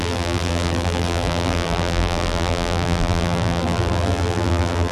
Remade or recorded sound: remade